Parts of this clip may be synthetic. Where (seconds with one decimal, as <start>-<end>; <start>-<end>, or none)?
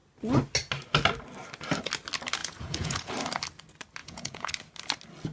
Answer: 2.4-3.1; 4.0-4.5